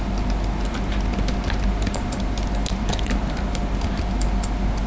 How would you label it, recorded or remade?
recorded